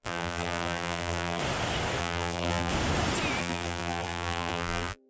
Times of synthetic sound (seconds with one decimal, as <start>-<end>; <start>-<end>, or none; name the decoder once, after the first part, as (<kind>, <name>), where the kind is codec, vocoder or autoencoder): 0.0-1.4 (vocoder, BigVGAN v2); 2.0-2.7; 3.4-5.1